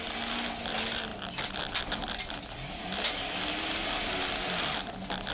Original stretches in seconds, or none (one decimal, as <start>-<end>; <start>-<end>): 0.0-5.3